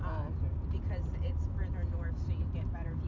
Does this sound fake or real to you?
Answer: real